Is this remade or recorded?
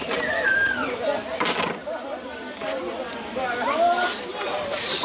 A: recorded